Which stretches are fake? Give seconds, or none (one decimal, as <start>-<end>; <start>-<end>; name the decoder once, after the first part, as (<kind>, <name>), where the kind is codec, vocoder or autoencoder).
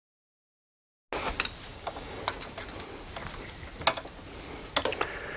1.7-2.2 (codec, DAC)